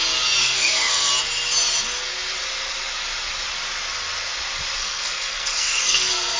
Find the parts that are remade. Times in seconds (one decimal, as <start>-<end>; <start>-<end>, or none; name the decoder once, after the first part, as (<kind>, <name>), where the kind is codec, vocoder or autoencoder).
0.4-1.1 (codec, SNAC); 4.8-6.4